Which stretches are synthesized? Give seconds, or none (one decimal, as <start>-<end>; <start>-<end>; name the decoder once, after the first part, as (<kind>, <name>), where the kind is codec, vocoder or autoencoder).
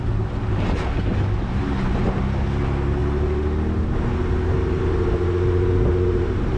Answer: none